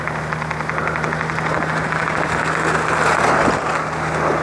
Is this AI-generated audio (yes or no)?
no